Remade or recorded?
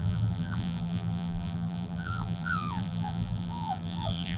remade